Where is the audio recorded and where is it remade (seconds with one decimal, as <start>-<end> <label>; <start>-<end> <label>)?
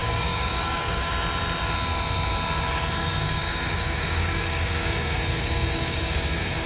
0.0-1.1 remade; 1.1-3.0 recorded; 3.0-6.7 remade